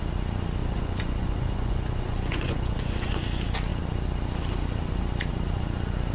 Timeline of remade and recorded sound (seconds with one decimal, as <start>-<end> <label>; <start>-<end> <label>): 0.0-0.6 recorded; 0.6-3.2 remade; 3.2-6.1 recorded